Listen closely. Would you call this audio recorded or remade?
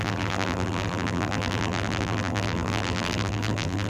remade